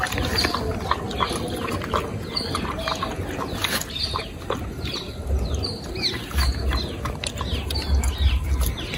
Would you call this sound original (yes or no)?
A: yes